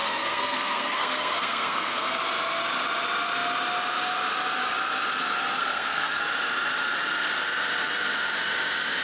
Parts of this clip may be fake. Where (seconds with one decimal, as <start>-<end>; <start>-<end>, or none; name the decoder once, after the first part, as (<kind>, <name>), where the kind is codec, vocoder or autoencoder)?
0.0-2.2 (codec, SNAC); 5.6-6.2